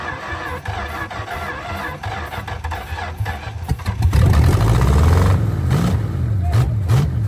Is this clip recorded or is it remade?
recorded